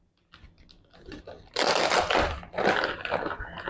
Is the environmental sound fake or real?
real